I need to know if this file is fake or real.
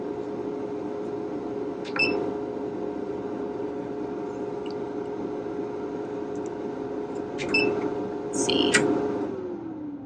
real